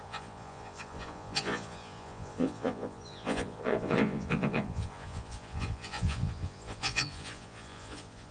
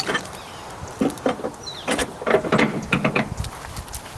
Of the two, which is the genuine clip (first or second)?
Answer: second